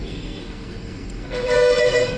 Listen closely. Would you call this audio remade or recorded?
remade